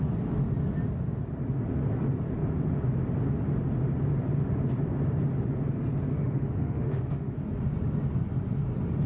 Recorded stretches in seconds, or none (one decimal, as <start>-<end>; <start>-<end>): 0.0-6.1; 7.4-9.1